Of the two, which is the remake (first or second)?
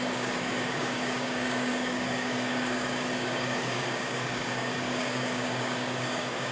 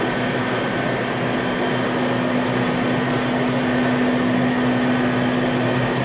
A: first